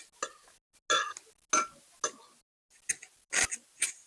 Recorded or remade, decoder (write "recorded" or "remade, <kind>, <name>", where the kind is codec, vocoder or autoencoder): recorded